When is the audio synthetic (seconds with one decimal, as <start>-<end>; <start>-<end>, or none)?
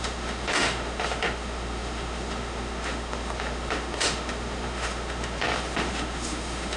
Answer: 0.0-6.8